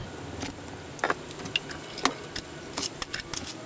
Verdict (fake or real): real